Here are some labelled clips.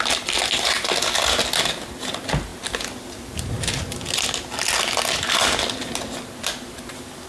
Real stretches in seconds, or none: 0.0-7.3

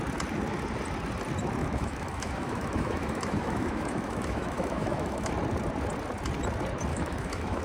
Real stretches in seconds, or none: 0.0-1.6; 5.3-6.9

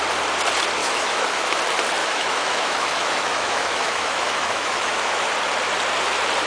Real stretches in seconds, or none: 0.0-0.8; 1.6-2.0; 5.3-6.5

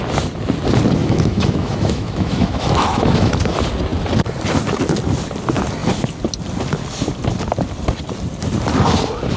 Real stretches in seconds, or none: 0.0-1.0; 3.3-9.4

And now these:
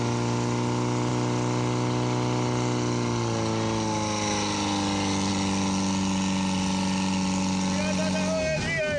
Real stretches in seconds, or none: 0.0-9.0

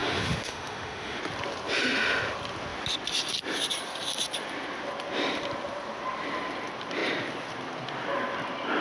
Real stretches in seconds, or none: 1.2-8.8

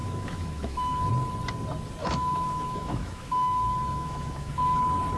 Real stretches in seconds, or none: 1.1-2.0; 4.8-5.2